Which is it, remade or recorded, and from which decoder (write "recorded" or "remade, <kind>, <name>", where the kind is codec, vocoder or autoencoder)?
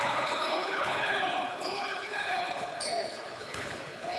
remade, codec, HILCodec